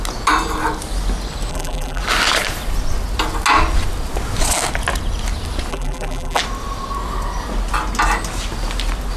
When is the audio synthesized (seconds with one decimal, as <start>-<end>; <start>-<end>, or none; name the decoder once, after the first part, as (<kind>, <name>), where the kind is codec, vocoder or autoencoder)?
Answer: 1.5-2.0 (vocoder, BigVGAN v2); 5.7-6.4